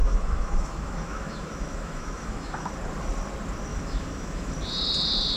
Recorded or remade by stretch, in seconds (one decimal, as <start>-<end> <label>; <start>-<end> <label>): 0.0-2.7 remade; 2.7-3.7 recorded; 3.7-4.5 remade; 4.5-5.4 recorded